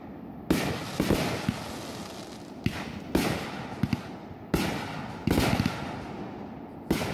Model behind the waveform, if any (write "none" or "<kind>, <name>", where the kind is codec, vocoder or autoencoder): none